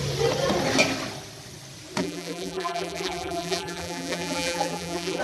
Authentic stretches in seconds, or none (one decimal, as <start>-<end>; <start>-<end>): 0.0-2.0